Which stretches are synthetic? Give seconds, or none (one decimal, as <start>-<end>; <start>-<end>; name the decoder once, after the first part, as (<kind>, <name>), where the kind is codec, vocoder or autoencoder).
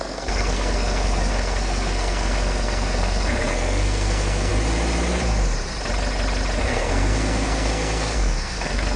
0.0-4.5 (codec, SNAC); 6.6-9.0